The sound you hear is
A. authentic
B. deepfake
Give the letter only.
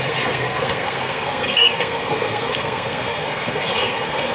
B